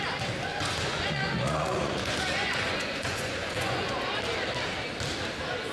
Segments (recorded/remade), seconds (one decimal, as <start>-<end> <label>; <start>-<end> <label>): 0.0-0.5 recorded; 0.5-3.9 remade; 3.9-5.7 recorded